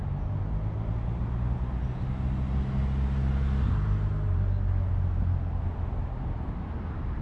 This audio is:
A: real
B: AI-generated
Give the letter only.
A